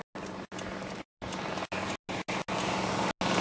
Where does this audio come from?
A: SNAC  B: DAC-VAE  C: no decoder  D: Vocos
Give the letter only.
C